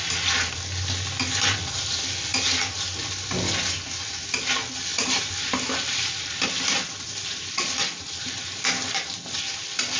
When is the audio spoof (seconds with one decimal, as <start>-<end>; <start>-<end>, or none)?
2.3-3.0; 4.9-9.2